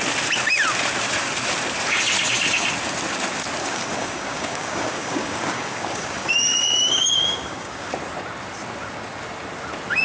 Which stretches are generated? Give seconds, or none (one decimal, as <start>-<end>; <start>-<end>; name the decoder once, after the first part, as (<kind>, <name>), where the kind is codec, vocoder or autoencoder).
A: 3.6-7.9 (codec, DAC)